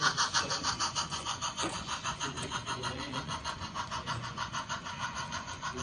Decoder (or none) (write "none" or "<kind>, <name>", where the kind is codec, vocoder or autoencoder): vocoder, Vocos